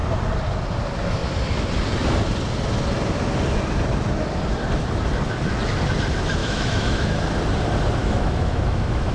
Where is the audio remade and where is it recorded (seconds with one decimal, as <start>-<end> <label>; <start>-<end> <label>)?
0.0-6.4 recorded; 6.4-7.2 remade; 7.2-8.0 recorded; 8.0-9.1 remade